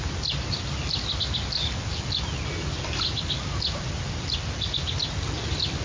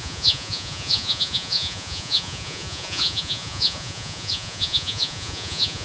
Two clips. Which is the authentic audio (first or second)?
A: first